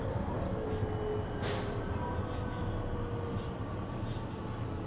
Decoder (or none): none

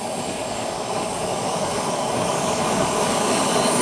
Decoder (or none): codec, DAC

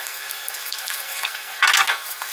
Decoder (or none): codec, SNAC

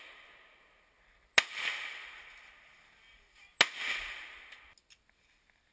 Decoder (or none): none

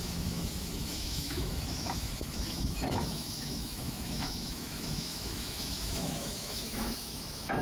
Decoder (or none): autoencoder, DAC-VAE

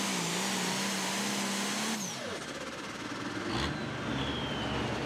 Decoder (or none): none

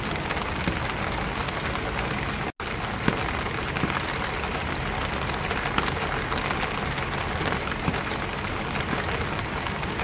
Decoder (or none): none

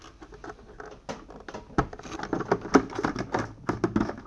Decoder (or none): none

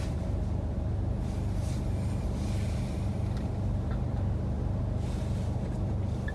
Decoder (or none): none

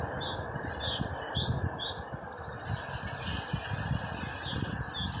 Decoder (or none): none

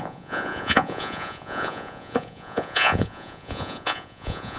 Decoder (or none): vocoder, Vocos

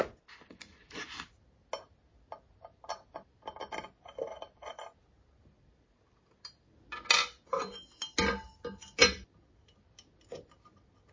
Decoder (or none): none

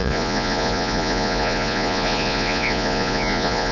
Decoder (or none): vocoder, Vocos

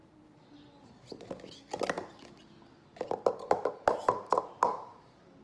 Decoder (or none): none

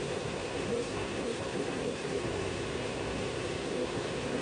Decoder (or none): codec, SNAC